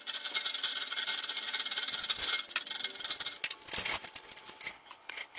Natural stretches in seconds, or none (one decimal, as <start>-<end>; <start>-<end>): 0.0-4.7